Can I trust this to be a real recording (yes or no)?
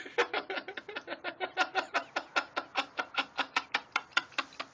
yes